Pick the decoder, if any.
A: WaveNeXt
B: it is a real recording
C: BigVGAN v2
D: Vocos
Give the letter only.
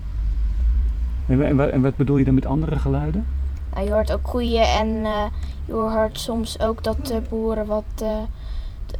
C